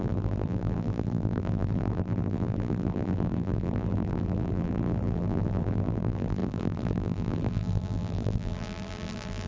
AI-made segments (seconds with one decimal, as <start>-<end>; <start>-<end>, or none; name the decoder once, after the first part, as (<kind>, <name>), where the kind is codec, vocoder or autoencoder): 0.0-9.5 (vocoder, BigVGAN v2)